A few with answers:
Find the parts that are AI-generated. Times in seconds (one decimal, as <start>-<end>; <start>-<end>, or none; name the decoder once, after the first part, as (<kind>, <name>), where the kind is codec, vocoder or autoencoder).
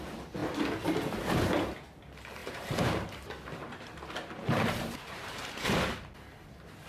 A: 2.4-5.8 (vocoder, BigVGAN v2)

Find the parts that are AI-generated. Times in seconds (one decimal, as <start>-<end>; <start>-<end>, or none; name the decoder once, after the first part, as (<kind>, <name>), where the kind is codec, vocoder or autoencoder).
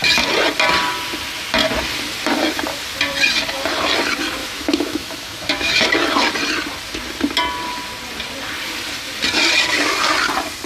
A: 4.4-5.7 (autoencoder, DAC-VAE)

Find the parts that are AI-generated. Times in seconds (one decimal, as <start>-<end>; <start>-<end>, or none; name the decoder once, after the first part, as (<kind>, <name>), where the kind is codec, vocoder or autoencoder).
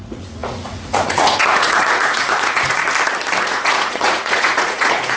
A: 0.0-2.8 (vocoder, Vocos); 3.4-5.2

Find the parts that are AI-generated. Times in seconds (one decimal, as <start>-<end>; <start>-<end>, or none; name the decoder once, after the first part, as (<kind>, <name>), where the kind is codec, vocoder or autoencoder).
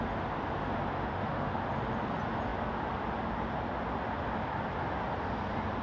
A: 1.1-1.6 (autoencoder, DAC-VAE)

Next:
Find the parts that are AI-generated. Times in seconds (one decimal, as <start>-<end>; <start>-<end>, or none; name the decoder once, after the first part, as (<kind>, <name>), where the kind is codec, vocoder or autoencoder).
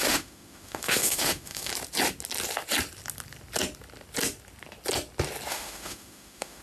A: 0.0-1.7 (autoencoder, DAC-VAE); 5.5-6.6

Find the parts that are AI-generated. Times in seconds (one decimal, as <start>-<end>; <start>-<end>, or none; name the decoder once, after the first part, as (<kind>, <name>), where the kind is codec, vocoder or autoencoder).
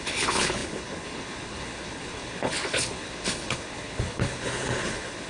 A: 0.0-5.3 (codec, HILCodec)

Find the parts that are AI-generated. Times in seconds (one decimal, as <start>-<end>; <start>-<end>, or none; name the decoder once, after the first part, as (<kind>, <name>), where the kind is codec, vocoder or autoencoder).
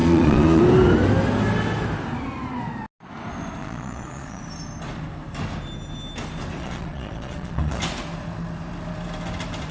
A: 0.0-0.6 (vocoder, Vocos); 3.6-4.4; 6.6-7.8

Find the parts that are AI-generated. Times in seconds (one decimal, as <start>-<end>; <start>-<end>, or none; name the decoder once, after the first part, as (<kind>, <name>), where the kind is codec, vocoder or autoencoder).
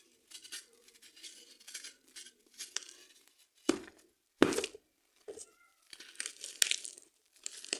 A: 0.4-3.2 (vocoder, BigVGAN v2); 4.4-6.5; 6.9-7.8